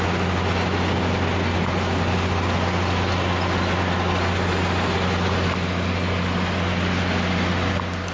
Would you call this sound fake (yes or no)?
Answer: no